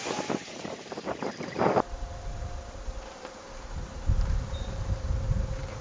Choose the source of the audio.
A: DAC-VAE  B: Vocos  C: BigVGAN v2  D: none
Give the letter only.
C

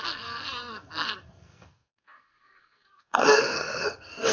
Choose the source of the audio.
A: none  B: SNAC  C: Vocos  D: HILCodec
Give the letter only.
B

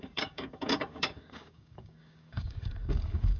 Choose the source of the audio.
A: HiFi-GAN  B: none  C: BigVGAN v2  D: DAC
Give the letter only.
D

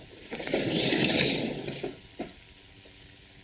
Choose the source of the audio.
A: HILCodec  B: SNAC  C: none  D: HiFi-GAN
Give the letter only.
C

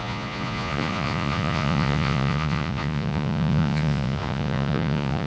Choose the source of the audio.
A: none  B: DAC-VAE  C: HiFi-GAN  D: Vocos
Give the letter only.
D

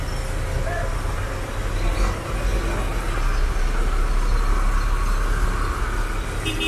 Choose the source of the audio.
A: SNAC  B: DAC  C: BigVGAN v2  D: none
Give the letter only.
D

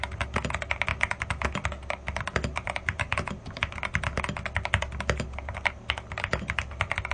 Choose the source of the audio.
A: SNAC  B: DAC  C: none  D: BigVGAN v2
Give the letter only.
C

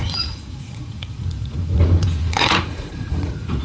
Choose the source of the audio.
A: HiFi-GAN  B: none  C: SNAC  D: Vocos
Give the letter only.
D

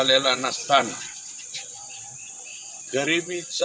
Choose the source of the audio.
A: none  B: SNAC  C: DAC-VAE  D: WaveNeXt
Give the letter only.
D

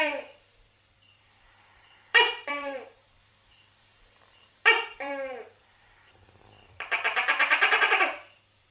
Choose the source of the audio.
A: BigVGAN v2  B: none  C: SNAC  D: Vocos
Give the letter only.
A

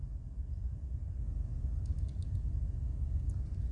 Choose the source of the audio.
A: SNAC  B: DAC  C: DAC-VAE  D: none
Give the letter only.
D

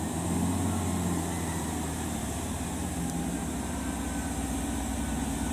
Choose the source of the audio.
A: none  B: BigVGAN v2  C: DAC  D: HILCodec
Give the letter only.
B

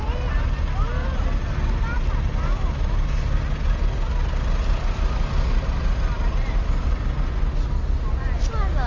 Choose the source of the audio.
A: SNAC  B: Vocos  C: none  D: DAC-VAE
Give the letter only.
C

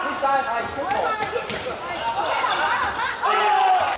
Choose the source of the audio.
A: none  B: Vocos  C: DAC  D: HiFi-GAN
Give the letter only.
A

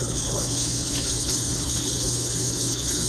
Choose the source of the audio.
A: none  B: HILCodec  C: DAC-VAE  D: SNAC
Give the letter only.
B